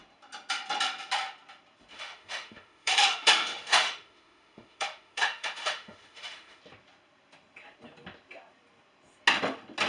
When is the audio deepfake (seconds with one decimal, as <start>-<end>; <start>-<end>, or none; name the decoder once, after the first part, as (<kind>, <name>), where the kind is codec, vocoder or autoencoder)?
1.9-6.6 (autoencoder, DAC-VAE)